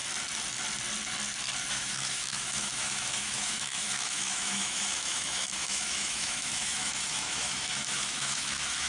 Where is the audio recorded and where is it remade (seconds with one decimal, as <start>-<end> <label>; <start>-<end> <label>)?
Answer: 0.0-1.7 recorded; 1.7-8.9 remade